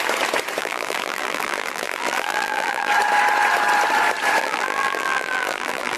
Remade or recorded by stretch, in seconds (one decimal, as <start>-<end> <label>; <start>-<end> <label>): 0.0-0.6 recorded; 0.6-2.9 remade; 2.9-4.4 recorded; 4.4-6.0 remade